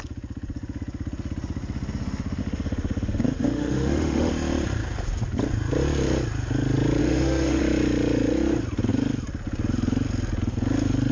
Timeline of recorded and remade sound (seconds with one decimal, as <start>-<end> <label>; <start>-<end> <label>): 0.0-2.4 recorded; 2.4-4.3 remade; 4.3-7.0 recorded; 7.0-7.6 remade; 7.6-11.1 recorded